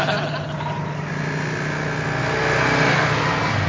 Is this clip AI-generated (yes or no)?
no